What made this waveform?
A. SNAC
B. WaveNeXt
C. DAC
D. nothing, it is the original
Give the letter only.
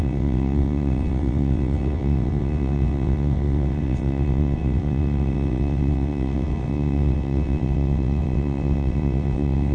B